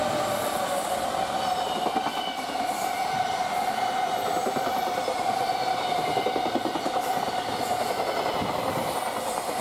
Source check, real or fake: real